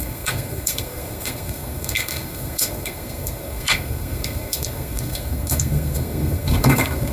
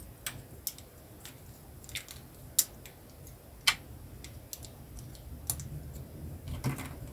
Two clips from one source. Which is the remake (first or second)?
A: first